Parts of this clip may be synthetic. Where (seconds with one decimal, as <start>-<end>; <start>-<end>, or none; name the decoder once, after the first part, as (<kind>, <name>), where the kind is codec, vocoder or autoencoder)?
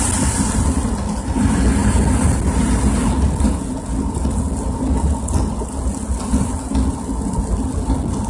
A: none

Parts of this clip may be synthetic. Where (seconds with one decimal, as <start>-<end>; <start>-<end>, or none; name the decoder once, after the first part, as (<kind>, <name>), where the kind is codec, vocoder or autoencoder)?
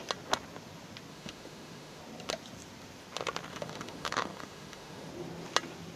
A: 1.1-2.0 (autoencoder, DAC-VAE); 3.5-5.1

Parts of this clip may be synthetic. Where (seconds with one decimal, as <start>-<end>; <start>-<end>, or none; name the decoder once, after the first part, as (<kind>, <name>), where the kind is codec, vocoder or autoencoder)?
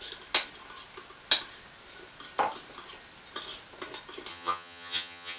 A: 4.3-5.4 (vocoder, HiFi-GAN)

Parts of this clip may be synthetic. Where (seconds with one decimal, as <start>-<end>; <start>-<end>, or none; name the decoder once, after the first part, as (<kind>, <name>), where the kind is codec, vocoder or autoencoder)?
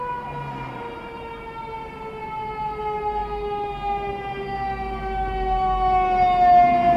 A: none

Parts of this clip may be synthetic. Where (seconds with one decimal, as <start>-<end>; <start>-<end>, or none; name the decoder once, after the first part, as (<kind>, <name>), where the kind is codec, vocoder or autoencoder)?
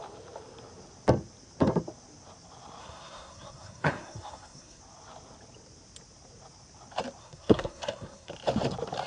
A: 2.8-4.8 (codec, SNAC); 7.2-8.3